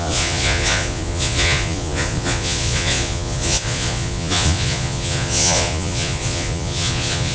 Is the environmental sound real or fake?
fake